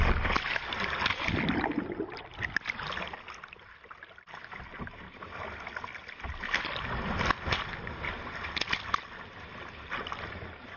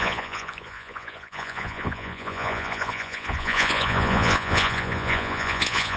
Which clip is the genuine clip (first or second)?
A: first